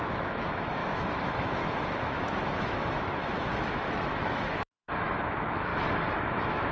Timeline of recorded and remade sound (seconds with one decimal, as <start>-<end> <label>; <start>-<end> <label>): 0.0-5.7 remade; 5.7-6.3 recorded; 6.3-6.7 remade